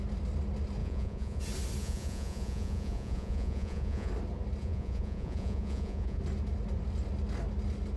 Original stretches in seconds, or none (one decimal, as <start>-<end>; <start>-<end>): 0.0-0.8; 1.4-1.8; 4.1-4.6; 6.2-8.0